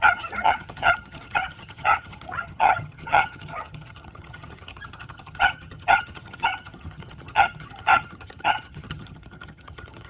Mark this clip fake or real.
fake